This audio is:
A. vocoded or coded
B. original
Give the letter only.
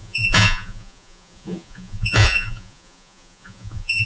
A